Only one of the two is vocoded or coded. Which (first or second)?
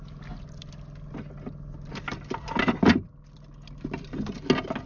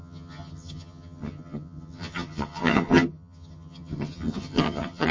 second